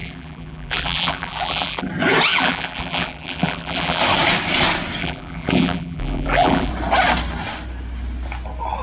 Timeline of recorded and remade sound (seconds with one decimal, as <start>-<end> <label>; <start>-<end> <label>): 0.0-1.9 remade; 1.9-2.3 recorded; 2.3-4.0 remade; 4.0-5.0 recorded; 5.0-6.7 remade; 6.7-8.8 recorded